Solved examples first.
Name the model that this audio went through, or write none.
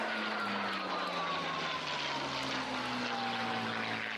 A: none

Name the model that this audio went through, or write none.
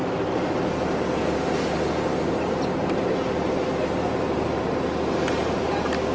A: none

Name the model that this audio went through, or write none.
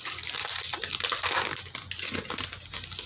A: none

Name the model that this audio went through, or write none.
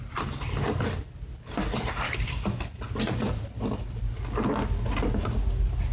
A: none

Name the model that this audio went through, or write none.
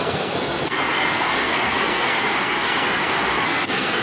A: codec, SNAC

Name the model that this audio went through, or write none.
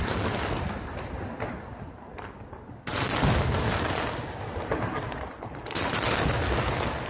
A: none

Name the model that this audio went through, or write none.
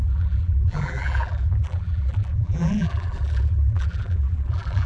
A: vocoder, BigVGAN v2